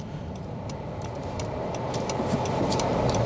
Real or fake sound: fake